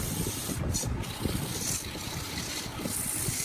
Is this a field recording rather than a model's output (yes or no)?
yes